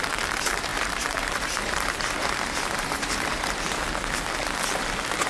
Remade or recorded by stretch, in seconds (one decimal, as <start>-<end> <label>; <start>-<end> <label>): 0.0-0.7 recorded; 0.7-3.8 remade; 3.8-5.3 recorded